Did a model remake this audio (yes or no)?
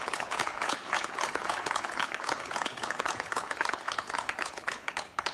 yes